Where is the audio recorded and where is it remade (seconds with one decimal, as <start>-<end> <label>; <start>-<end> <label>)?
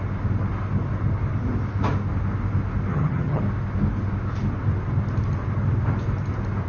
0.0-2.9 recorded; 2.9-3.4 remade; 3.4-6.7 recorded